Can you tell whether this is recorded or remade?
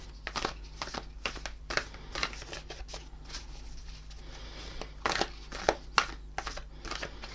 recorded